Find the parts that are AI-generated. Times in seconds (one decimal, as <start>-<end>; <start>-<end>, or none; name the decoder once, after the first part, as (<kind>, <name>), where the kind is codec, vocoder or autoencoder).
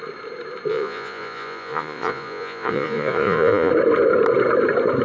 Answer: 0.7-3.7 (vocoder, Vocos)